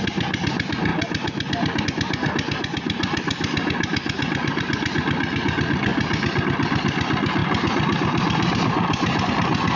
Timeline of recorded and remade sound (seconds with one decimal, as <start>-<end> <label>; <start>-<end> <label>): 0.0-7.4 recorded; 7.4-9.3 remade; 9.3-9.8 recorded